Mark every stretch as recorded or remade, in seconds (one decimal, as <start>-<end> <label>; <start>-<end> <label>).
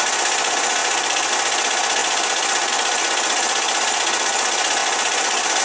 0.0-0.8 recorded; 0.8-1.3 remade; 1.3-2.0 recorded; 2.0-2.7 remade; 2.7-4.8 recorded; 4.8-5.6 remade